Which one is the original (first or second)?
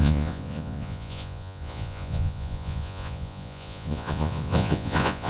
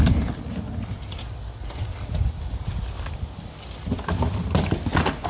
second